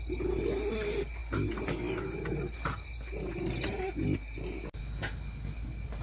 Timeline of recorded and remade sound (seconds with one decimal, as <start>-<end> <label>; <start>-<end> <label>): 0.0-6.0 recorded